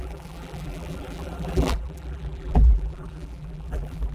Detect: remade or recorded remade